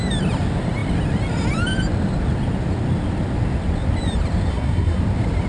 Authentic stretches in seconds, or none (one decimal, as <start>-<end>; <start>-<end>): 0.0-4.5; 5.0-5.5